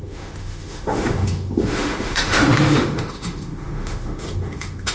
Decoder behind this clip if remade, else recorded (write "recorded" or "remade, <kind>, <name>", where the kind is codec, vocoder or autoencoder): remade, autoencoder, DAC-VAE